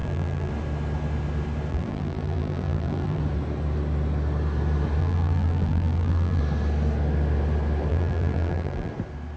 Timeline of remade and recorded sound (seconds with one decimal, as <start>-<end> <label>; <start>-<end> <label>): 0.0-0.5 remade; 0.5-1.7 recorded; 1.7-3.2 remade; 3.2-5.0 recorded; 5.0-6.4 remade; 6.4-7.9 recorded; 7.9-8.9 remade; 8.9-9.4 recorded